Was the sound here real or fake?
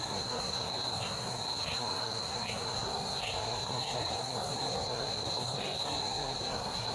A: fake